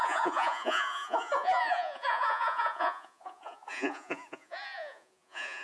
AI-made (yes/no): yes